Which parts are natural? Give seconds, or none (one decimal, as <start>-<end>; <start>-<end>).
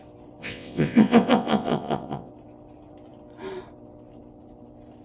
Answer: 0.0-0.4; 2.3-5.0